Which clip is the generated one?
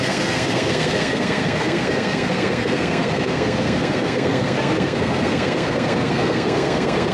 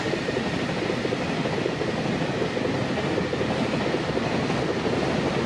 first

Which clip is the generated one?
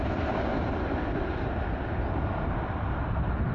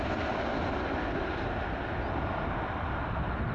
first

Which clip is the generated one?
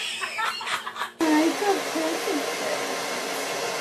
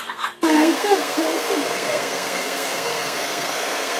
second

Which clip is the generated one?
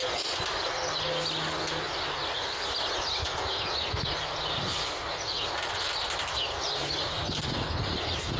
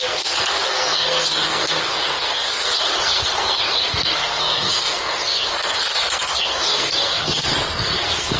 second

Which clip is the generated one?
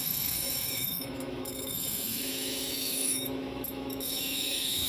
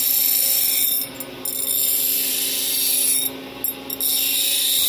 first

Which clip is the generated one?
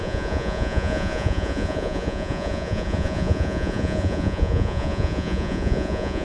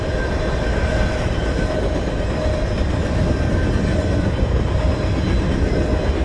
first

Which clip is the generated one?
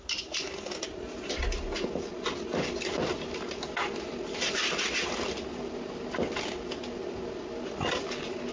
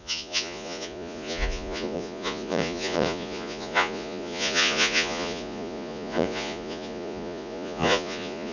second